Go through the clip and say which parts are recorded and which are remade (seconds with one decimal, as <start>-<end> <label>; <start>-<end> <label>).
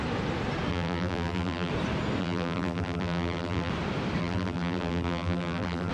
0.0-0.7 recorded; 0.7-1.7 remade; 1.7-2.2 recorded; 2.2-3.7 remade; 3.7-4.2 recorded; 4.2-5.9 remade